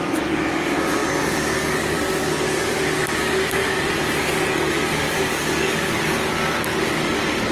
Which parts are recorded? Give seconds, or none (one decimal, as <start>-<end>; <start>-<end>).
3.6-4.2